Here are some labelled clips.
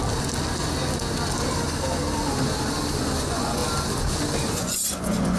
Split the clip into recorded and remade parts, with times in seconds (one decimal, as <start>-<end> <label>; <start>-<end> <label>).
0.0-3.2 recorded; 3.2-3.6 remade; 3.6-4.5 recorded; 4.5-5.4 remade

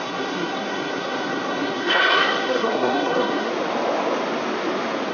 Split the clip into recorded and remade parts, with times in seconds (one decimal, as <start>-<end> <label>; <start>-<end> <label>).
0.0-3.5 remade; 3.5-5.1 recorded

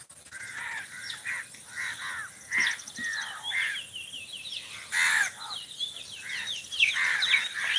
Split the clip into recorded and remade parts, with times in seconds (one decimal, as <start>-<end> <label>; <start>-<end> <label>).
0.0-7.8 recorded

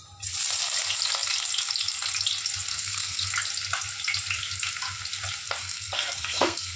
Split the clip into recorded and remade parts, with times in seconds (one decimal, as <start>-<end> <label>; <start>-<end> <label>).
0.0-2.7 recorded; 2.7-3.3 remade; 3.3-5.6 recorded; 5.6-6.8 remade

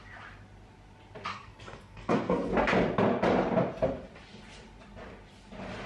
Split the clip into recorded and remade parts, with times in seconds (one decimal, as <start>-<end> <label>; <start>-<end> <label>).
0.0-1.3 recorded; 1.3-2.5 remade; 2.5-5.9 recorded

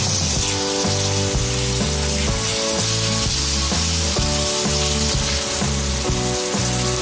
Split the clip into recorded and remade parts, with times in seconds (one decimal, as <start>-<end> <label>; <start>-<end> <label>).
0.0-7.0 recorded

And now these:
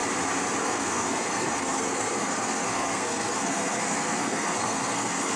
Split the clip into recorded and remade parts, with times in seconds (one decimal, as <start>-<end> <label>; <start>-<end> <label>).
0.0-0.6 recorded; 0.6-5.4 remade

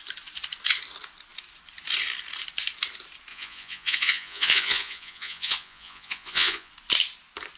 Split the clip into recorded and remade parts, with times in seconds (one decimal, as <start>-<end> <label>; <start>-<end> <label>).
0.0-3.3 recorded; 3.3-6.7 remade; 6.7-7.6 recorded